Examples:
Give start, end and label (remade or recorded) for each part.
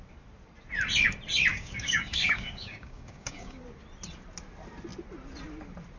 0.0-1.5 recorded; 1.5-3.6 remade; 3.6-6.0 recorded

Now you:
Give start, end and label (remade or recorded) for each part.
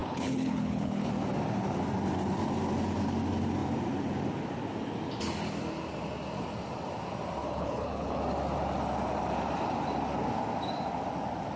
0.0-1.1 remade; 1.1-7.4 recorded; 7.4-8.2 remade; 8.2-11.6 recorded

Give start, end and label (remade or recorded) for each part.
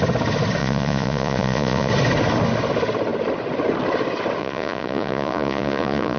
0.0-0.6 recorded; 0.6-1.9 remade; 1.9-4.4 recorded; 4.4-6.2 remade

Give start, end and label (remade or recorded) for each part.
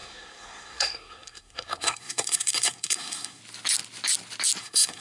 0.0-3.4 remade; 3.4-4.6 recorded; 4.6-5.0 remade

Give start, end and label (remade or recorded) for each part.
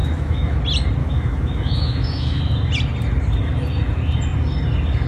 0.0-0.6 remade; 0.6-1.0 recorded; 1.0-2.4 remade; 2.4-5.1 recorded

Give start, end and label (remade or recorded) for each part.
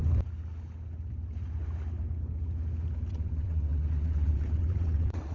0.0-3.1 recorded; 3.1-5.3 remade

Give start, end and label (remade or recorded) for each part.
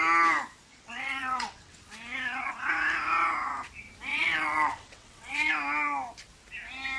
0.0-0.7 recorded; 0.7-1.8 remade; 1.8-4.1 recorded; 4.1-5.5 remade; 5.5-7.0 recorded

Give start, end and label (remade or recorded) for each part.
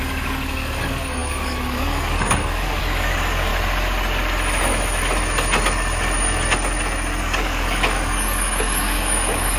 0.0-3.5 remade; 3.5-7.2 recorded; 7.2-9.6 remade